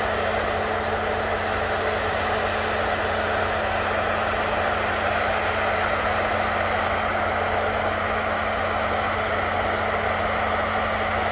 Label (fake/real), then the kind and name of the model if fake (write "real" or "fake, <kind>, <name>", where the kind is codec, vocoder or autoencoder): real